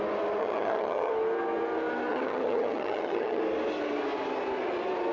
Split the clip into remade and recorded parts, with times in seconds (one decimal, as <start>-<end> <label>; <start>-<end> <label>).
0.0-0.4 recorded; 0.4-1.1 remade; 1.1-2.1 recorded; 2.1-3.4 remade; 3.4-5.1 recorded